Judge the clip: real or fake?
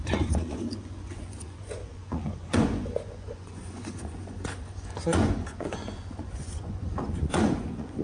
fake